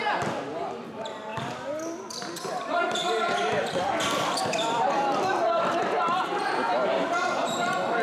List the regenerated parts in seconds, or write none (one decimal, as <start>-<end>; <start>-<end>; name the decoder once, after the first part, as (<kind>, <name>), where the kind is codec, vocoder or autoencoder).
0.0-8.0 (vocoder, BigVGAN v2)